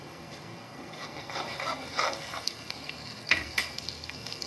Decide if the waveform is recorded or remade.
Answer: remade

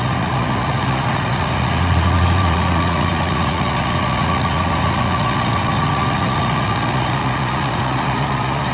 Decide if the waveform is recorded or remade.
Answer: remade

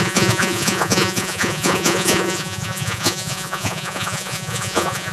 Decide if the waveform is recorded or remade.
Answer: remade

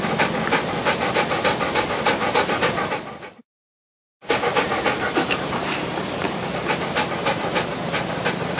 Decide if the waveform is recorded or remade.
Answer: recorded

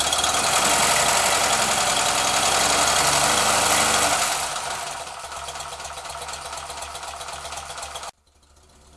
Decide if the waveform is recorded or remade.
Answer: recorded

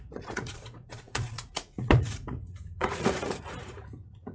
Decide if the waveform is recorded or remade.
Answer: remade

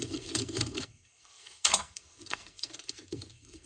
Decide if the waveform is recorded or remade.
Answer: remade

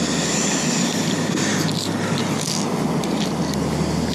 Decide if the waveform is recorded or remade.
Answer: recorded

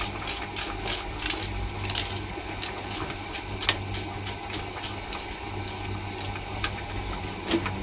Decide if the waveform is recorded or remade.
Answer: recorded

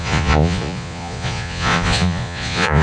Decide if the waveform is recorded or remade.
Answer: remade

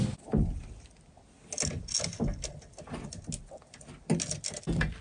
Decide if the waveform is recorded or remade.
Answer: recorded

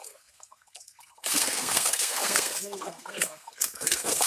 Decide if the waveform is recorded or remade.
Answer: remade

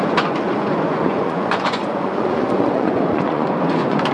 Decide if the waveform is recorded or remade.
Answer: remade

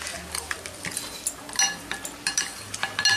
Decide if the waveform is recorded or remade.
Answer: recorded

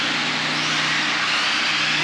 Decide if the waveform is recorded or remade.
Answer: recorded